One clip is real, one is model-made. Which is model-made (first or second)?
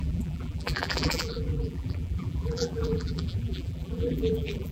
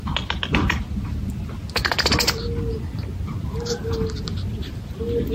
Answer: first